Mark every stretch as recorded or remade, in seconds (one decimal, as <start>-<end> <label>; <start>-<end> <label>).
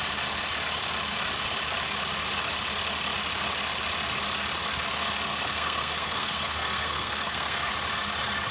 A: 0.0-5.3 recorded; 5.3-7.7 remade; 7.7-8.5 recorded